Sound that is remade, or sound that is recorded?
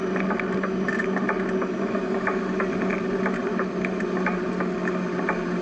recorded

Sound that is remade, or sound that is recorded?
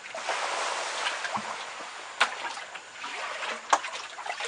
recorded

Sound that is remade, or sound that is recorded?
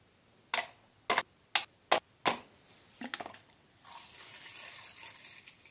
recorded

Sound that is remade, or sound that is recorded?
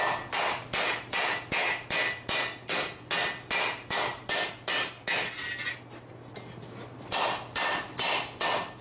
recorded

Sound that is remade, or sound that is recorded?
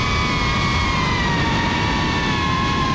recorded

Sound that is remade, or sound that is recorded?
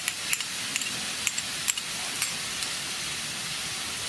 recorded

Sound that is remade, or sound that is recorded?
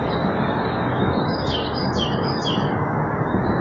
remade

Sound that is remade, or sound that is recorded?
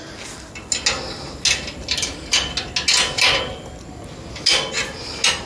recorded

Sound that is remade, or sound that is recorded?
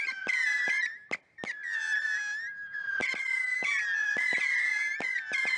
recorded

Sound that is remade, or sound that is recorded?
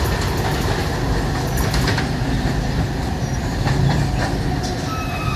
recorded